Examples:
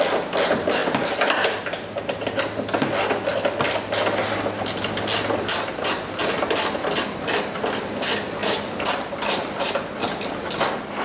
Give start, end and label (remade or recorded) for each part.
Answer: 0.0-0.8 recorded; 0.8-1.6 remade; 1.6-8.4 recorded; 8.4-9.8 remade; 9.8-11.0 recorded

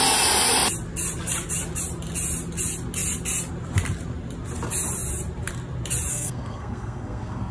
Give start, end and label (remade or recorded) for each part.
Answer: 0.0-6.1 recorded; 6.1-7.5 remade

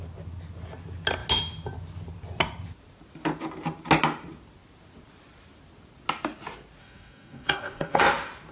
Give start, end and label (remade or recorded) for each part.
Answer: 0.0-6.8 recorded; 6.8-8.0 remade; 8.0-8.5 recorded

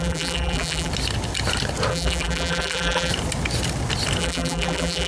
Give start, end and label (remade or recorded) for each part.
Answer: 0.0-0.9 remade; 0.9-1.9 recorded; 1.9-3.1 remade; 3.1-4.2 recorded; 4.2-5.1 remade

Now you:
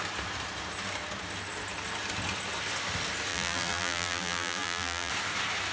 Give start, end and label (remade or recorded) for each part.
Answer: 0.0-3.3 recorded; 3.3-5.1 remade; 5.1-5.7 recorded

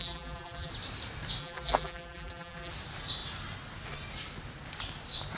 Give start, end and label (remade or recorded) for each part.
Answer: 0.0-0.7 remade; 0.7-1.4 recorded; 1.4-2.7 remade; 2.7-5.4 recorded